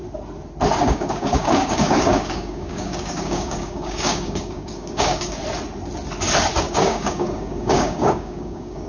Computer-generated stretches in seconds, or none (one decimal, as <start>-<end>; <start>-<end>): 0.8-5.4; 6.6-8.9